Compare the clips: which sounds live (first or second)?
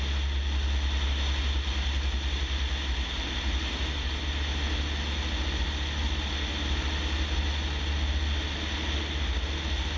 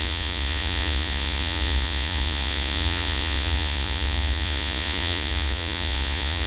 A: first